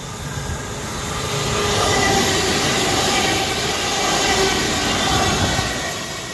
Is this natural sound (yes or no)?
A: yes